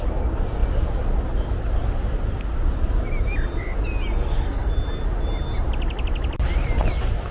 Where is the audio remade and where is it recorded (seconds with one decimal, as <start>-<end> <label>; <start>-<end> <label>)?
0.0-4.2 recorded; 4.2-4.7 remade; 4.7-7.3 recorded